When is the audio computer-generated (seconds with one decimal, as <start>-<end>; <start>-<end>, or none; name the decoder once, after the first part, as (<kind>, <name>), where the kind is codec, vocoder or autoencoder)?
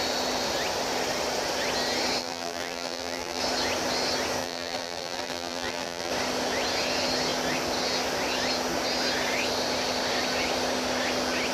2.2-3.4 (vocoder, BigVGAN v2); 4.4-6.1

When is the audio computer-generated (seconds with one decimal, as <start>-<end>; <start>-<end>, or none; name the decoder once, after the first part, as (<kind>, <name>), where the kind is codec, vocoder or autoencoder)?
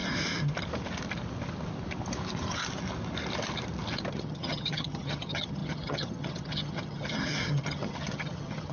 4.1-8.7 (vocoder, HiFi-GAN)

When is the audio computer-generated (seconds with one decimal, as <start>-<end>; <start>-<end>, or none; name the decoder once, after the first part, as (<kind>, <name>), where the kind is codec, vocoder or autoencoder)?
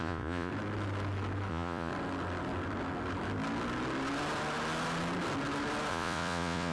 0.0-0.5 (vocoder, Vocos); 1.5-1.9; 5.9-6.7